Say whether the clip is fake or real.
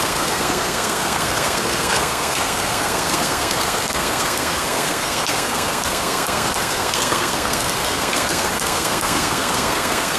fake